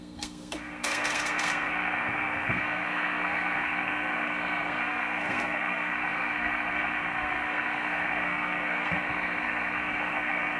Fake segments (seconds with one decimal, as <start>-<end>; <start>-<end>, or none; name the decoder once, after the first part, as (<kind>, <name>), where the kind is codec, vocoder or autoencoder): 0.0-10.6 (codec, SNAC)